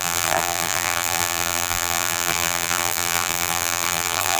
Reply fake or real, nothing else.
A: fake